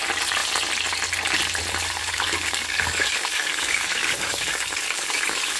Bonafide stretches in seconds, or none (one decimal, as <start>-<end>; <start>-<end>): 0.0-2.0